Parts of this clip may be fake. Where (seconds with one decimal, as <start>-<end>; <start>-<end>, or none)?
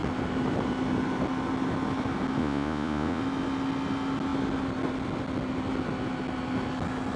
2.4-3.2